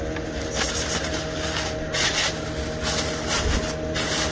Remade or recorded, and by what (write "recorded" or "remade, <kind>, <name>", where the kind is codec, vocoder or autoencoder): recorded